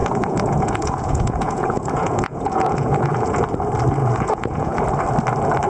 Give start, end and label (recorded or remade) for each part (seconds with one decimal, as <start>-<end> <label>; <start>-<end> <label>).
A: 0.0-3.4 remade; 3.4-4.0 recorded; 4.0-4.8 remade; 4.8-5.7 recorded